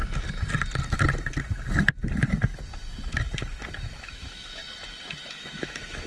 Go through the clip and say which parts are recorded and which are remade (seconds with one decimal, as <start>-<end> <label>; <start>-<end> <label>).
0.0-3.7 recorded; 3.7-4.6 remade; 4.6-5.2 recorded; 5.2-6.1 remade